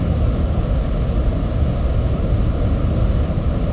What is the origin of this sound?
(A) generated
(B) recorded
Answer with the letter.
B